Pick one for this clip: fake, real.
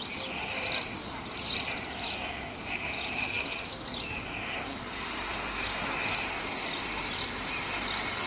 real